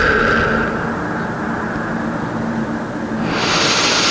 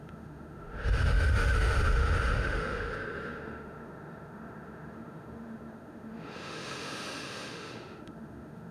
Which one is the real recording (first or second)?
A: first